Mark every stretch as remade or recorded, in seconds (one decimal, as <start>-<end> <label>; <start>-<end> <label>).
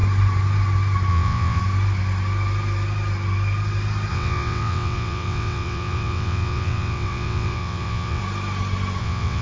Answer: 0.0-1.1 recorded; 1.1-1.6 remade; 1.6-4.1 recorded; 4.1-8.2 remade; 8.2-9.0 recorded; 9.0-9.4 remade